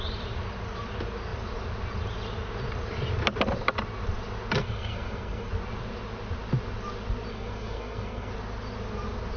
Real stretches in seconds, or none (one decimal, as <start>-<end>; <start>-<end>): 0.0-4.6; 5.5-7.3; 8.3-9.4